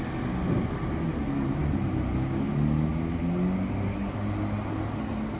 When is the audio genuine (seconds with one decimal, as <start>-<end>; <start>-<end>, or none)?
0.0-5.4